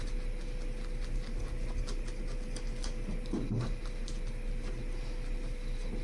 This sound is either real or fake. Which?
real